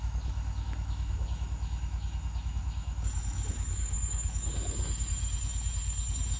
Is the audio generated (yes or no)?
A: yes